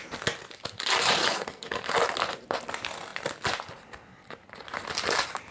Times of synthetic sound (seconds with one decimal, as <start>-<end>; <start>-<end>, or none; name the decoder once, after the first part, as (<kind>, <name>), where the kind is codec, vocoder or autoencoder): 1.2-1.8 (codec, SNAC)